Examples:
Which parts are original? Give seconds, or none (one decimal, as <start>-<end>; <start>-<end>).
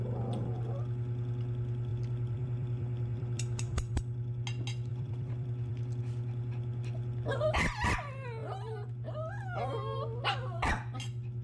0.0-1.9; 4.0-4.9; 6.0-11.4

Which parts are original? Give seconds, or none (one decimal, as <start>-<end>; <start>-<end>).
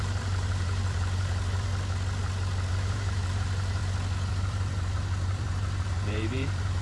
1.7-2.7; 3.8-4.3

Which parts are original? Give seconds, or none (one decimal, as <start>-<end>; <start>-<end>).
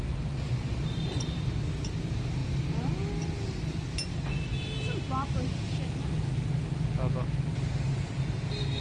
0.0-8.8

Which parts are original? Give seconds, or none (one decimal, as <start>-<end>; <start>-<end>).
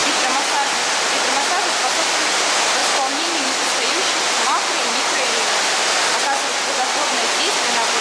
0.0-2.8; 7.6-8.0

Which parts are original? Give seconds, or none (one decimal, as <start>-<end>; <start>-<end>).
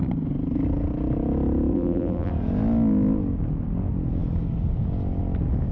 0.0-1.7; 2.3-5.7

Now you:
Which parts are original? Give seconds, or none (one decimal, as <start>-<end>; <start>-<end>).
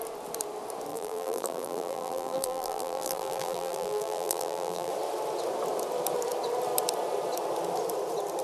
0.0-0.9; 4.9-8.4